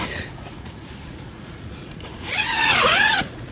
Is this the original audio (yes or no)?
no